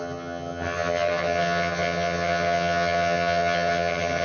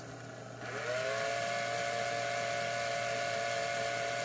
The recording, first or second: second